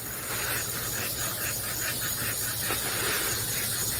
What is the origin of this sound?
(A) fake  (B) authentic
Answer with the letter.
B